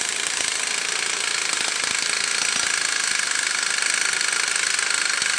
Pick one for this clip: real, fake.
fake